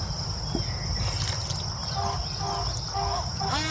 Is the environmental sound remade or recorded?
recorded